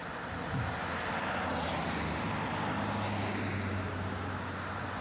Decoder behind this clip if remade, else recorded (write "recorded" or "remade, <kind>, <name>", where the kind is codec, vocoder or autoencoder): recorded